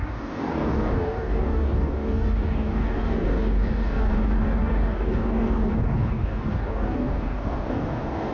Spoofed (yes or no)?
yes